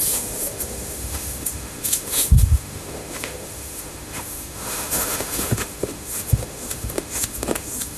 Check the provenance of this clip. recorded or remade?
remade